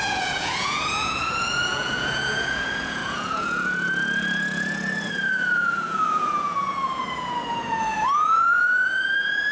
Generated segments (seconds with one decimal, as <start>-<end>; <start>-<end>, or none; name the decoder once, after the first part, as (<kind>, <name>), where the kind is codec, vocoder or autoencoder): 0.0-9.5 (vocoder, Vocos)